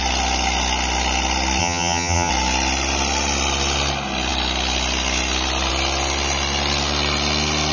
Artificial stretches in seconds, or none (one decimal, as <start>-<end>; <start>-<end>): 1.6-2.3